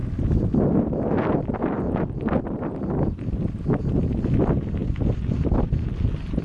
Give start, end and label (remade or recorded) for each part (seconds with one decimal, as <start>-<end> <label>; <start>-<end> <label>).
0.0-6.4 recorded